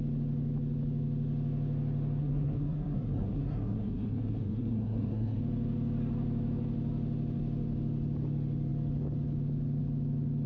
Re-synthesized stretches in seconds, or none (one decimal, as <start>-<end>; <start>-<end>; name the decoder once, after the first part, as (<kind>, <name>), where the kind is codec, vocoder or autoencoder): 2.2-5.4 (codec, SNAC)